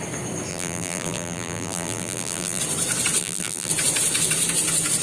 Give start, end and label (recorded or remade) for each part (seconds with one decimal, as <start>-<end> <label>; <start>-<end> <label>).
0.0-0.5 recorded; 0.5-2.6 remade; 2.6-3.2 recorded; 3.2-3.7 remade; 3.7-5.0 recorded